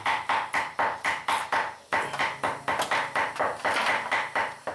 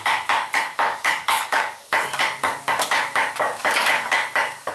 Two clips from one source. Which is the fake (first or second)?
second